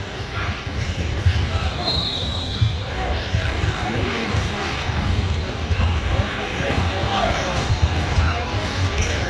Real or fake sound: fake